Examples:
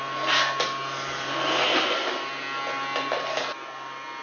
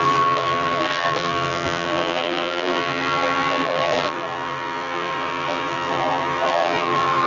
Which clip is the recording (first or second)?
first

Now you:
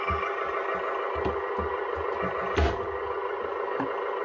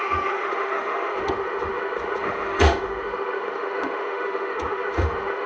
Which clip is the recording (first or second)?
first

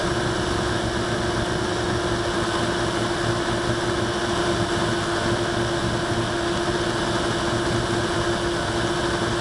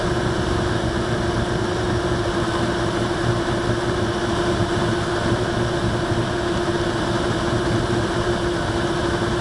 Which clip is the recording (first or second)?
first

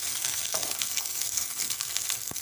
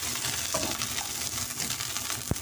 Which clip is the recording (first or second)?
second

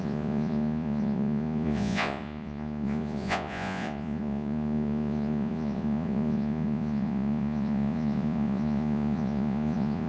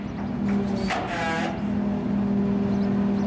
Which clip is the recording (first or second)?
second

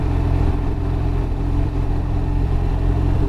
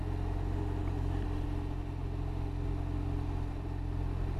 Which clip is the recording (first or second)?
second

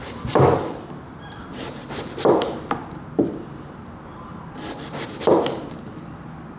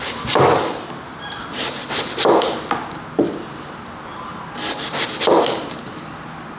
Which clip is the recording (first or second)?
second